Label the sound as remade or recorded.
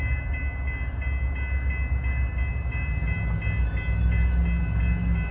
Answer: recorded